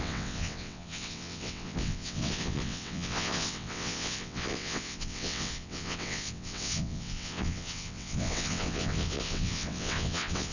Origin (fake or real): fake